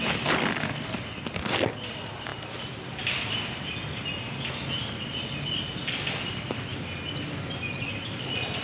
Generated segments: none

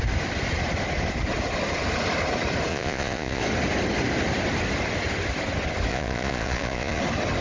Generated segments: 2.7-3.4 (vocoder, Vocos); 5.9-7.0

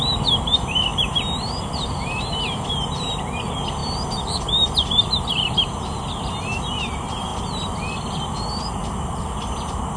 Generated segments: none